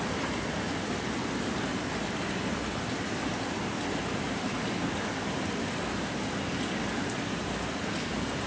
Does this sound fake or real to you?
real